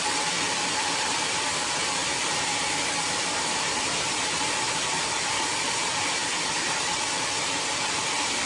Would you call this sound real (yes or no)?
no